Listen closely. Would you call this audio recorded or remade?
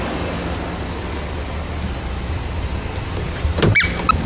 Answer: recorded